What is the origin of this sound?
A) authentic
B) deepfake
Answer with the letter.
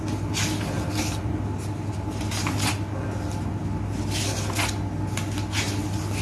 A